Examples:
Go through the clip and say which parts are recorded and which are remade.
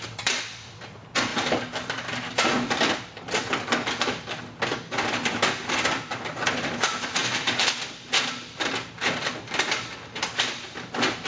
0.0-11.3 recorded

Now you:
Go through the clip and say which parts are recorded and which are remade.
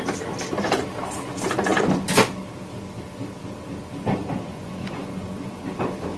0.0-4.5 recorded; 4.5-5.7 remade; 5.7-6.2 recorded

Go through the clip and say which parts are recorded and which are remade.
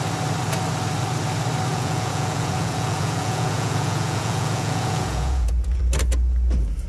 0.0-1.7 recorded; 1.7-5.8 remade; 5.8-6.9 recorded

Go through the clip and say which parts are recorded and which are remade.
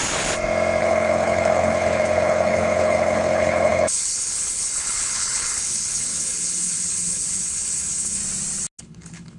0.0-0.8 recorded; 0.8-8.2 remade; 8.2-8.8 recorded; 8.8-9.4 remade